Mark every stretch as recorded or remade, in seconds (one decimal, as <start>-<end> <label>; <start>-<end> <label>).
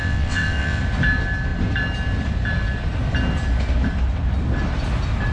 0.0-0.8 remade; 0.8-5.3 recorded